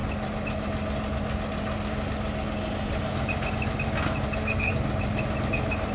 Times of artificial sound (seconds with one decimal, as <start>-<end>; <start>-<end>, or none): none